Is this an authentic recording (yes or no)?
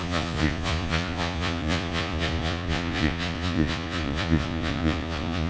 no